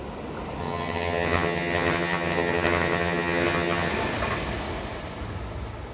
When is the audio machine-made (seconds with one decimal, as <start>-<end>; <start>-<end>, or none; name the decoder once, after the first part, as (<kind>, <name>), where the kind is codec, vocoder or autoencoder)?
0.6-3.9 (vocoder, HiFi-GAN)